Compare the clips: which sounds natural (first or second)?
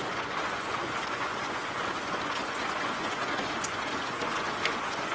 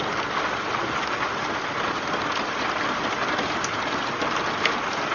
second